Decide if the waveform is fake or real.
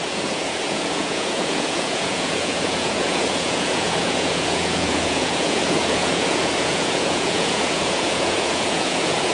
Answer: fake